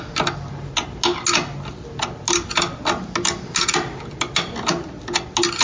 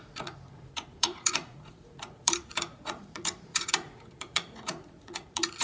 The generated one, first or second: second